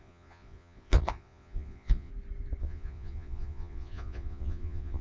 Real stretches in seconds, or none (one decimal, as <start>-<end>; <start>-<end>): 2.1-2.6